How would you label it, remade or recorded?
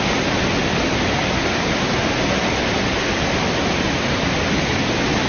recorded